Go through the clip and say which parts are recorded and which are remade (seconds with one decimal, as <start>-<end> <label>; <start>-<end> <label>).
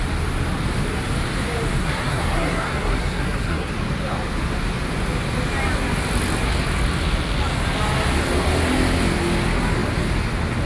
0.0-1.8 recorded; 1.8-3.7 remade; 3.7-10.7 recorded